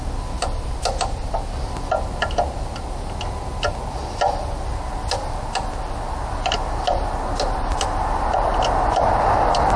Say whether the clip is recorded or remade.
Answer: recorded